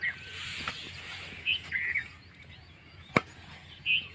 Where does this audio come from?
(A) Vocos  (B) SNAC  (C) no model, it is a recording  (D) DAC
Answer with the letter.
A